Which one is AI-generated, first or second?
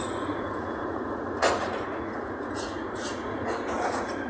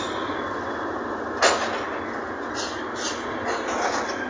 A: first